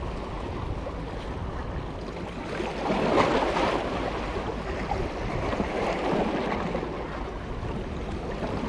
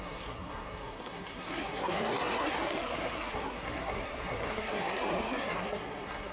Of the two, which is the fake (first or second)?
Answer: second